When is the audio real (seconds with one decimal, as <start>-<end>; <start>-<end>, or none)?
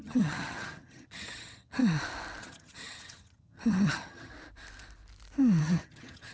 1.8-2.4; 4.3-5.6